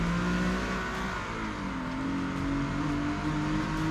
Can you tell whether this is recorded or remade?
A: recorded